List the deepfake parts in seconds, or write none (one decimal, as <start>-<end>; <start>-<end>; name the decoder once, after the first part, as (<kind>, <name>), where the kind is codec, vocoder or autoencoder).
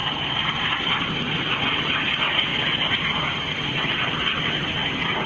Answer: 0.0-0.8 (vocoder, BigVGAN v2); 2.5-3.0